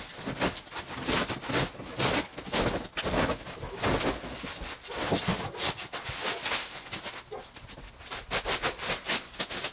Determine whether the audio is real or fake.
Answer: real